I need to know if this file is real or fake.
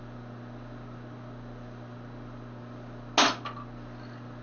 real